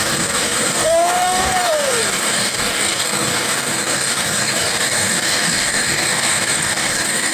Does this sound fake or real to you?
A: fake